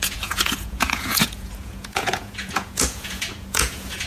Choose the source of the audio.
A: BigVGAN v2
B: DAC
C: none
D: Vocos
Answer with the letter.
D